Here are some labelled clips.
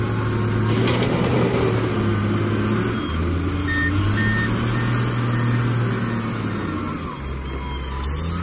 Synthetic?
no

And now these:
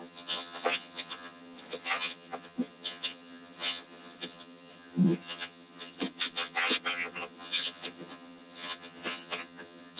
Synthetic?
yes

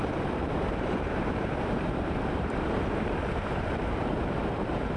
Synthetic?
yes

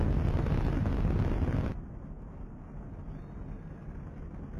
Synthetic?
no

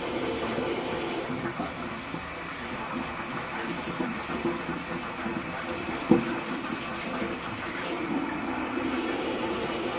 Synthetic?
no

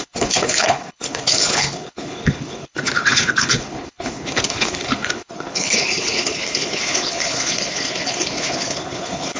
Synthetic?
yes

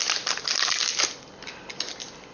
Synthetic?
no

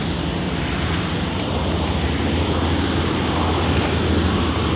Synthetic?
no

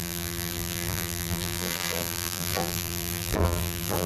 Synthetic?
yes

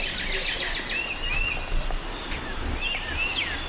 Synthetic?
no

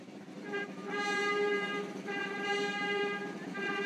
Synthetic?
yes